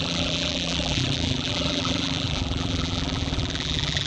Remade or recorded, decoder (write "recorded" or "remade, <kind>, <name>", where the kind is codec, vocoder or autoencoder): remade, vocoder, BigVGAN v2